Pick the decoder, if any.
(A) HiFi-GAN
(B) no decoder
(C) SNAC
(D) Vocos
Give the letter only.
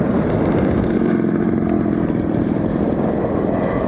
B